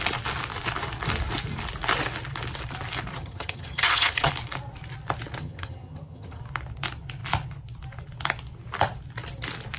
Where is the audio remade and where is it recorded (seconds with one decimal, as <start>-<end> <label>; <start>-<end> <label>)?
0.0-3.1 recorded; 3.1-4.3 remade; 4.3-5.4 recorded; 5.4-6.4 remade; 6.4-9.8 recorded